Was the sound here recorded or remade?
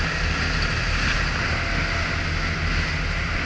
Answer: recorded